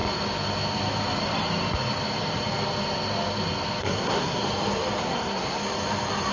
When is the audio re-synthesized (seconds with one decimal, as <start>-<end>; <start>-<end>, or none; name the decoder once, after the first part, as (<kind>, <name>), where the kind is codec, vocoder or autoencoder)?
3.8-4.4 (codec, SNAC); 5.0-5.6